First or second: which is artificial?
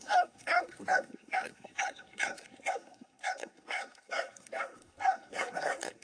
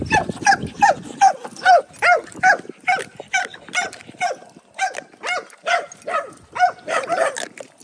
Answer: first